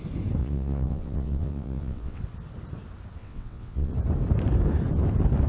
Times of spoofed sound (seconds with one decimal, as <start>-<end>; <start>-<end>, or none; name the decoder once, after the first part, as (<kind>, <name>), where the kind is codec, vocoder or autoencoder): 0.4-2.2 (vocoder, WaveNeXt); 3.2-3.9